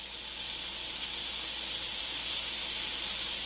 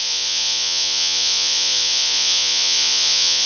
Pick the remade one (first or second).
second